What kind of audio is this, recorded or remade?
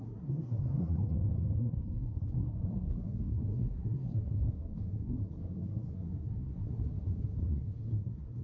remade